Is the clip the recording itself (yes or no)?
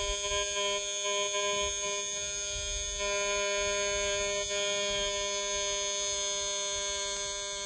yes